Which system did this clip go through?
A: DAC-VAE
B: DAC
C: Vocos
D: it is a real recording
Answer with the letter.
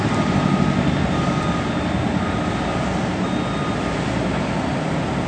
D